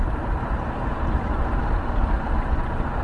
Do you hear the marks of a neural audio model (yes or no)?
yes